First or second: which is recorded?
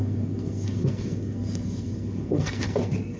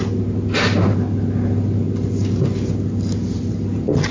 second